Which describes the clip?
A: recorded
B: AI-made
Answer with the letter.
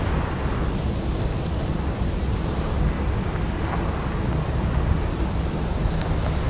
A